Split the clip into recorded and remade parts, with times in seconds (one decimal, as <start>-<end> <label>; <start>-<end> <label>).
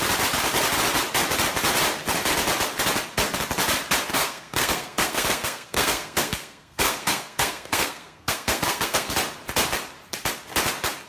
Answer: 0.0-4.1 recorded; 4.1-9.1 remade; 9.1-11.1 recorded